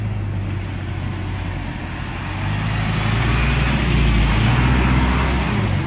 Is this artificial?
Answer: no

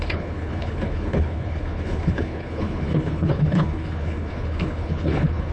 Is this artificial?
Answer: yes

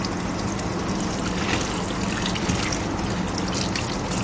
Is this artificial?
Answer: no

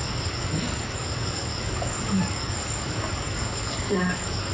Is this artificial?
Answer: yes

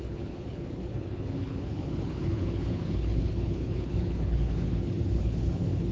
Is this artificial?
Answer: yes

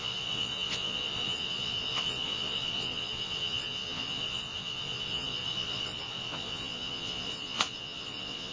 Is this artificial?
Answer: yes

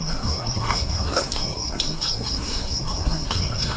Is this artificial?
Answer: yes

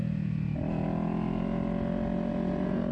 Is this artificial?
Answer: no